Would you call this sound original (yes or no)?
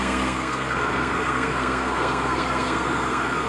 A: no